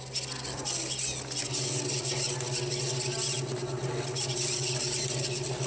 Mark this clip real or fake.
real